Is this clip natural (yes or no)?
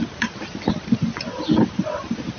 yes